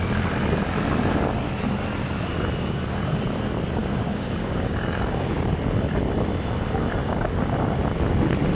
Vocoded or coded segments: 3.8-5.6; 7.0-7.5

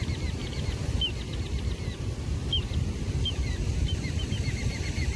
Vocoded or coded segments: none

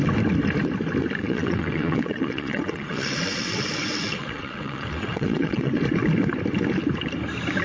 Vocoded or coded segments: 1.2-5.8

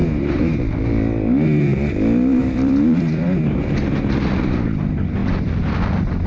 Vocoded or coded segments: 2.4-4.0